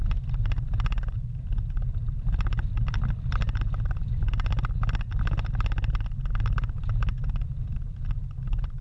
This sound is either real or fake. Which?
real